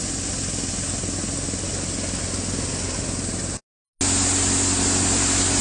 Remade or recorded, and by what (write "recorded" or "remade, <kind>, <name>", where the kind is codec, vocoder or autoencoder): recorded